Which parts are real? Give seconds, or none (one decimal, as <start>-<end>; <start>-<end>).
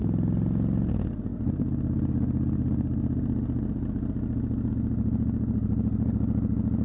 0.0-6.8